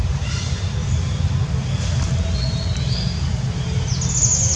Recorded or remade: recorded